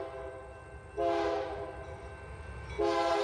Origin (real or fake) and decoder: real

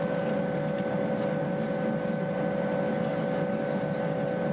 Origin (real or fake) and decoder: real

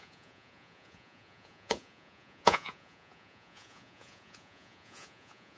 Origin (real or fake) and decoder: fake, vocoder, Vocos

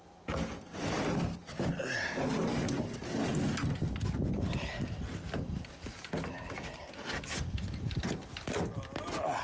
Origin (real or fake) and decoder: real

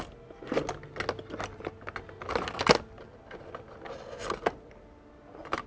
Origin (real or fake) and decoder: real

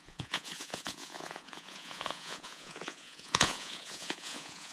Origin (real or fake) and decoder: fake, vocoder, Vocos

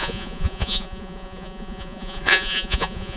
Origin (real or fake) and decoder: fake, vocoder, Vocos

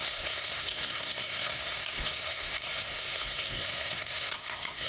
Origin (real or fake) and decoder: fake, codec, SNAC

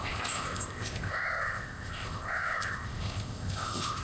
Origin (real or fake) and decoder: fake, codec, ZipCodec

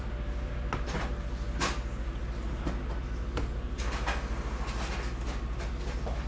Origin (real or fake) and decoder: real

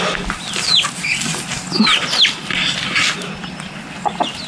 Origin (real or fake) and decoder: real